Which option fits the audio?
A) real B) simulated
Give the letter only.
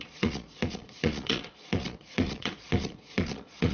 B